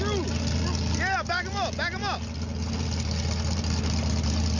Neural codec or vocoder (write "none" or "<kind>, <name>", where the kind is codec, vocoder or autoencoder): none